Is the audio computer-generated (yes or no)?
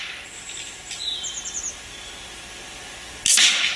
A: no